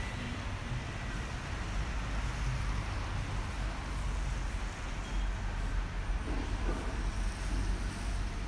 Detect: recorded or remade recorded